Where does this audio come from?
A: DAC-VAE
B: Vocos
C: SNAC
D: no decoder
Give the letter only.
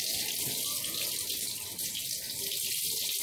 D